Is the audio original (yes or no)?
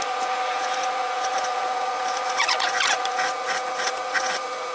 no